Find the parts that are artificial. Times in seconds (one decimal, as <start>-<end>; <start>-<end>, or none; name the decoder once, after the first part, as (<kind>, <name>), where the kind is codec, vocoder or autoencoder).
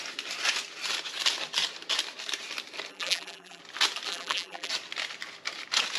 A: 2.9-3.6 (vocoder, BigVGAN v2); 4.1-4.7